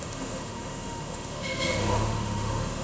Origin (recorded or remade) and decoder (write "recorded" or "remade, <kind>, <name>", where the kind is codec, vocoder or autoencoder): remade, autoencoder, DAC-VAE